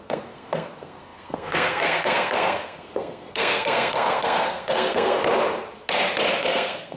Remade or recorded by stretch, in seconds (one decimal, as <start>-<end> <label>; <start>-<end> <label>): 0.0-5.2 remade; 5.2-6.4 recorded; 6.4-7.0 remade